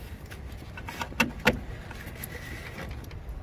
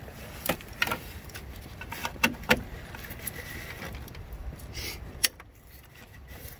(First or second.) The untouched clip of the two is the first